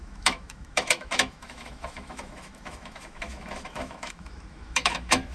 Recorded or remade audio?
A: remade